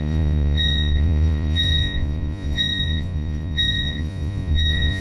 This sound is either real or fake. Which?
fake